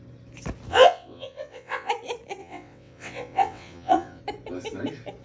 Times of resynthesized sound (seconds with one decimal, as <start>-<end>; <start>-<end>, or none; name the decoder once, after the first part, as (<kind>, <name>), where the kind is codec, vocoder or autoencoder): 0.7-1.9 (vocoder, WaveNeXt); 2.4-4.2